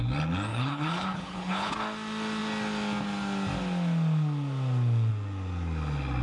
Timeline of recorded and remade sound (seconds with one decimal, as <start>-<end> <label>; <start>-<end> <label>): 0.0-0.5 recorded; 0.5-1.7 remade; 1.7-6.2 recorded